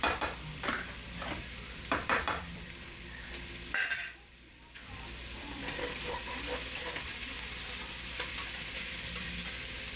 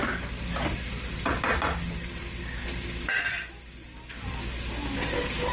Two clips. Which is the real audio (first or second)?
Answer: second